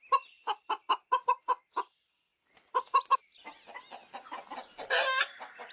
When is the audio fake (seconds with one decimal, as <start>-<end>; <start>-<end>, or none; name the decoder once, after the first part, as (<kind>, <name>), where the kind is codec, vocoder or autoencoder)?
none